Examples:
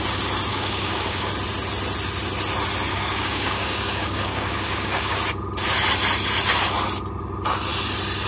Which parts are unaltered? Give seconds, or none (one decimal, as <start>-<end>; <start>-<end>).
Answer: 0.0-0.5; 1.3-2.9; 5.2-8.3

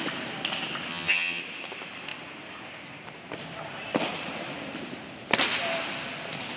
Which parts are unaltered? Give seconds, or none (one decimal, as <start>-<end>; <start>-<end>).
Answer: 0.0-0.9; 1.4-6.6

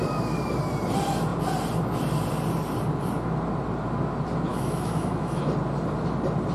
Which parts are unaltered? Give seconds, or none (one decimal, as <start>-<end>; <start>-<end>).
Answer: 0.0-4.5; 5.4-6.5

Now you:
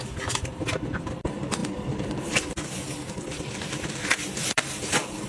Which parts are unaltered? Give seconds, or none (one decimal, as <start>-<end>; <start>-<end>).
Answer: 0.0-1.6; 4.8-5.3